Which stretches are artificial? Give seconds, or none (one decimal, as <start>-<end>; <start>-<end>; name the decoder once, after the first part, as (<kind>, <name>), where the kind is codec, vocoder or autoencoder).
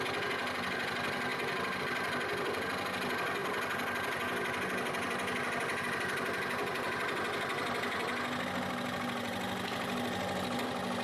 none